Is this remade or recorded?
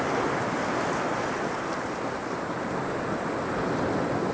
recorded